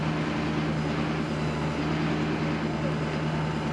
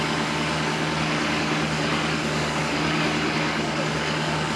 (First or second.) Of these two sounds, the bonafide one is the first